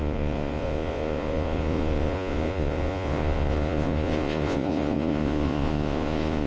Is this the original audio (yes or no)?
no